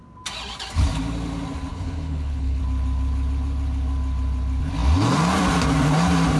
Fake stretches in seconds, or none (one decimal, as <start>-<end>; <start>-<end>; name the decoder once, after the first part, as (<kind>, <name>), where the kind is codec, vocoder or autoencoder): 1.7-2.6 (codec, HILCodec)